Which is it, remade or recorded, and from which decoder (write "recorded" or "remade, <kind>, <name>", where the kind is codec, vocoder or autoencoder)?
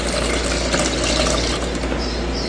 recorded